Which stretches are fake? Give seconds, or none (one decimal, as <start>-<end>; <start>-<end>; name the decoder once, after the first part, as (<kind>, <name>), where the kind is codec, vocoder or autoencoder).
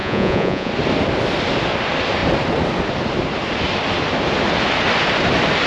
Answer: 0.0-0.7 (vocoder, Vocos)